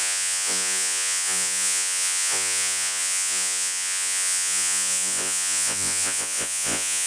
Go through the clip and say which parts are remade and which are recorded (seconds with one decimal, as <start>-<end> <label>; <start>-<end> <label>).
0.0-7.1 remade